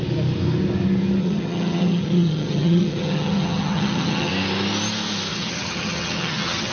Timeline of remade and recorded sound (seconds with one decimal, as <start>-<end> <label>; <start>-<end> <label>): 0.0-1.2 recorded; 1.2-4.3 remade; 4.3-5.3 recorded; 5.3-6.7 remade